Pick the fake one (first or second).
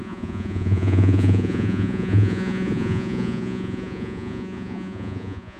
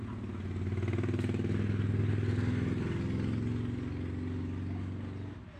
first